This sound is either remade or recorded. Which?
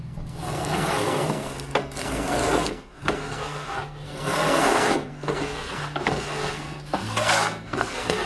remade